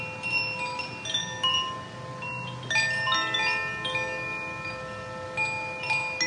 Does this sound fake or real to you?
real